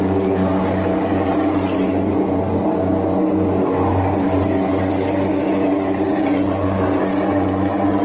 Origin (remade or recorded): recorded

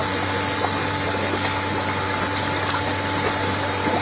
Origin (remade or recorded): remade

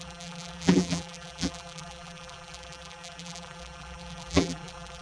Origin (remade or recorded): remade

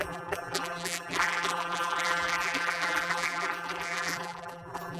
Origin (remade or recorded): remade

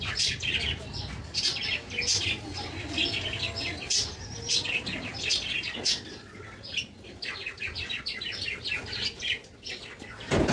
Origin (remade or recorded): recorded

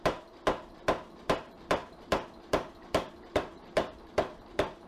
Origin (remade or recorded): remade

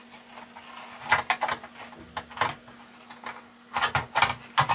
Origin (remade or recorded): recorded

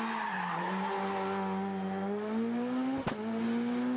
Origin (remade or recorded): recorded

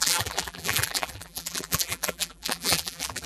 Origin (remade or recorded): remade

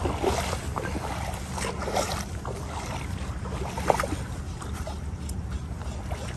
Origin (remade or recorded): recorded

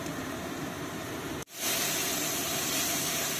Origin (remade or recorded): remade